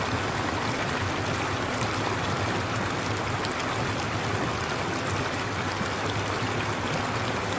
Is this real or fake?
real